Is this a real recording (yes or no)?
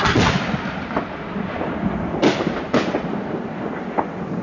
yes